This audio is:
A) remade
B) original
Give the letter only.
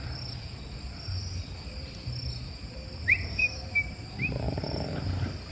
A